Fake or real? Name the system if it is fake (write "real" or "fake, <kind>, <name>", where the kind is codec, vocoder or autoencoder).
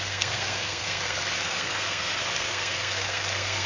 fake, codec, SNAC